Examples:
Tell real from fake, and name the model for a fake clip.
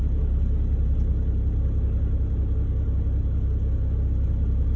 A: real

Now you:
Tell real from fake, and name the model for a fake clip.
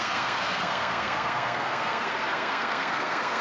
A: fake, codec, SNAC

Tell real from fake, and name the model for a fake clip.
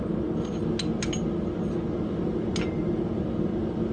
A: real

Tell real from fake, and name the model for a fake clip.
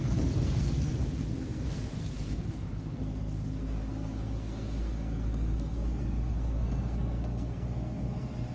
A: fake, codec, SNAC